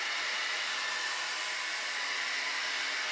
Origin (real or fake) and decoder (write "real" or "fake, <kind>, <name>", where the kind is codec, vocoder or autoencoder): real